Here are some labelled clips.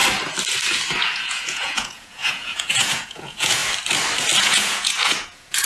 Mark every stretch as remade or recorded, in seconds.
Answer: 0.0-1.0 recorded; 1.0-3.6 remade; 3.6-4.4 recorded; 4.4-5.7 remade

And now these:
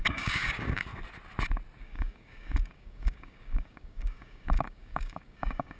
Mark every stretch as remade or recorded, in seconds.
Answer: 0.0-0.9 remade; 0.9-1.8 recorded; 1.8-5.8 remade

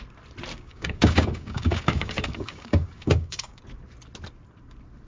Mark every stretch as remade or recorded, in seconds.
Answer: 0.0-0.5 recorded; 0.5-3.6 remade; 3.6-5.1 recorded